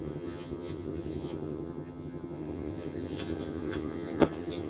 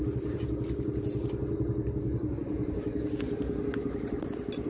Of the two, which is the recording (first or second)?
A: second